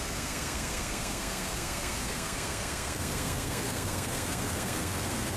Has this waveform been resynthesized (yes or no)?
yes